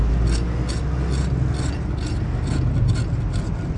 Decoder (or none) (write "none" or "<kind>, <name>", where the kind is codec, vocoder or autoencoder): none